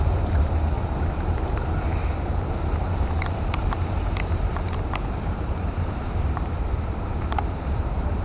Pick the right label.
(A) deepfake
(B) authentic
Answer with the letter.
A